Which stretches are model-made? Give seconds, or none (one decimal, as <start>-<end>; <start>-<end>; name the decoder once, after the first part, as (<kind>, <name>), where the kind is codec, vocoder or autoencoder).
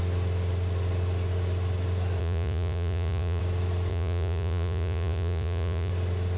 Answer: 2.2-3.4 (vocoder, Vocos); 3.9-5.9